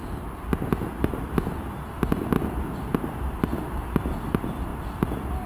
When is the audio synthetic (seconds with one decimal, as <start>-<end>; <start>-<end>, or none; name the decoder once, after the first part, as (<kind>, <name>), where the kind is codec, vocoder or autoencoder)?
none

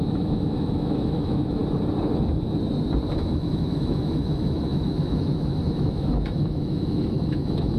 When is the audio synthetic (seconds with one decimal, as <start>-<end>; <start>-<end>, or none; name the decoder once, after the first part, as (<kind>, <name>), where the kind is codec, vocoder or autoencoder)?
0.0-1.6 (autoencoder, DAC-VAE); 3.1-7.8

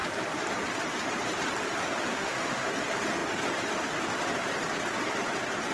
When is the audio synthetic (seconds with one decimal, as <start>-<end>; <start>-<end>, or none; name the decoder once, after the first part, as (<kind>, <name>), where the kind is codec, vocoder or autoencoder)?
2.1-2.7 (autoencoder, DAC-VAE)

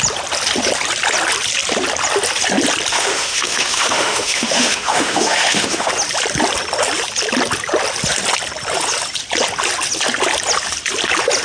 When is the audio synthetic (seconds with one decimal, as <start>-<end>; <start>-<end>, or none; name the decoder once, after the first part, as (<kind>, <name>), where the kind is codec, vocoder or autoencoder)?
2.9-5.9 (autoencoder, DAC-VAE)

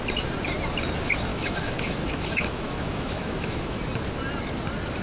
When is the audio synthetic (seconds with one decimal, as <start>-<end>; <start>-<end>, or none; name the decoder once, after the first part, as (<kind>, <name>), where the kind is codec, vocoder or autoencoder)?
1.3-3.8 (autoencoder, DAC-VAE)

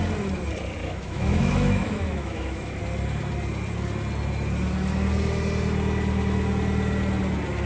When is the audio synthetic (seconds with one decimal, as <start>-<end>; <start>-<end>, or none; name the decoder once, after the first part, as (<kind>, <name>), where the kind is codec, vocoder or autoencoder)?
0.8-2.8 (autoencoder, DAC-VAE)

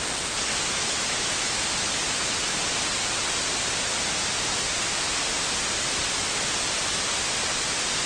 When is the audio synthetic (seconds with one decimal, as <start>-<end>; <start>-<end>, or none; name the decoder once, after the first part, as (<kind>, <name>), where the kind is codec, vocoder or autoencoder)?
0.5-1.6 (autoencoder, DAC-VAE)

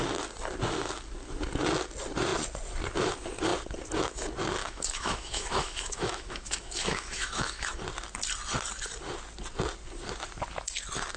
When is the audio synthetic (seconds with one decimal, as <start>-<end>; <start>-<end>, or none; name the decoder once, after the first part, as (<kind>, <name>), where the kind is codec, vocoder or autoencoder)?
4.6-7.8 (autoencoder, DAC-VAE)